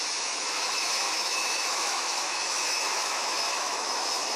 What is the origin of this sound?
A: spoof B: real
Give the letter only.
A